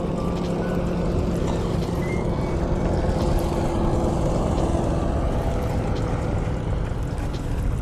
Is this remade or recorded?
recorded